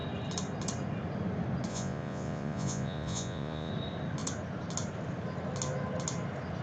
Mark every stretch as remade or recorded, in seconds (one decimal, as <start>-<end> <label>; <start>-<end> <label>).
0.0-1.7 recorded; 1.7-3.7 remade; 3.7-6.6 recorded